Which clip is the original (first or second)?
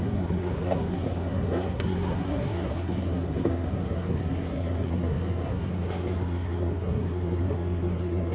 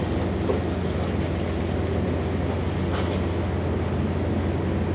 second